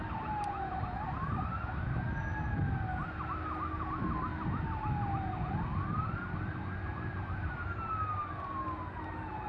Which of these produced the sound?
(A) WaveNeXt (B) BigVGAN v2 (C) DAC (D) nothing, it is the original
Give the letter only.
D